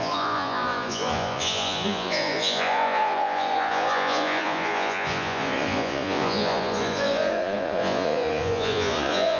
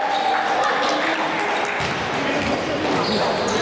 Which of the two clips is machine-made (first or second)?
first